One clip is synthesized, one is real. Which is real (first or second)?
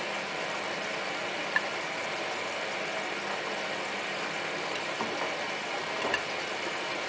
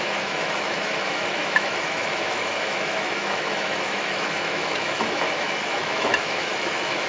first